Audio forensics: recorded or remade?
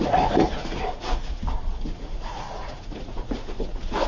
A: remade